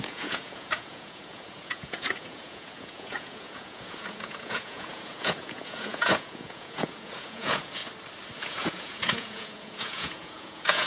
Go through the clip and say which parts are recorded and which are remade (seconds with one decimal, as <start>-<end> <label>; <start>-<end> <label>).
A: 0.0-7.8 remade; 7.8-8.4 recorded; 8.4-10.9 remade